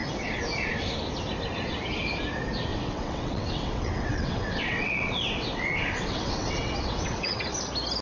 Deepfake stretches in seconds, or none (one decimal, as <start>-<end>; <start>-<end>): 2.7-7.4